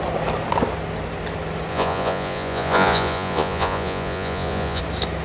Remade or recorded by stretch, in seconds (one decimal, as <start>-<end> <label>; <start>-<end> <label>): 0.0-1.7 recorded; 1.7-4.8 remade; 4.8-5.2 recorded